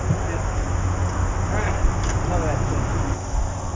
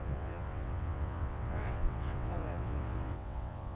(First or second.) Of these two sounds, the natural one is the first